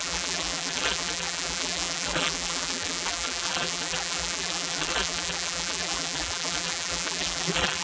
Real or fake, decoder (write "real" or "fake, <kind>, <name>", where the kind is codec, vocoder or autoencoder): fake, vocoder, BigVGAN v2